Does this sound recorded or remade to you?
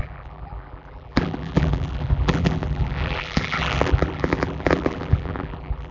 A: remade